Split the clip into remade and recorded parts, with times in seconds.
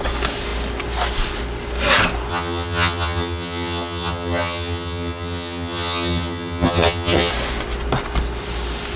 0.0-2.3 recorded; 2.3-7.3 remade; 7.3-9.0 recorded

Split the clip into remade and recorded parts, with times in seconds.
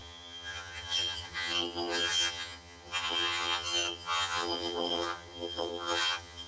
0.0-6.5 remade